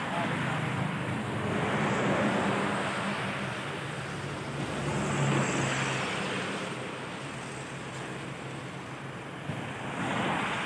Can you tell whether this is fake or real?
real